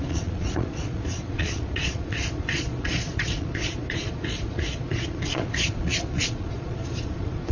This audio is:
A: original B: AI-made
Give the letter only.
B